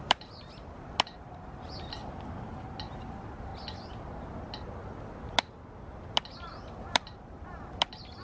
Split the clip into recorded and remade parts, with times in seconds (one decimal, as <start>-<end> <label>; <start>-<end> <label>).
0.0-2.0 remade; 2.0-3.1 recorded; 3.1-3.5 remade; 3.5-6.5 recorded; 6.5-8.2 remade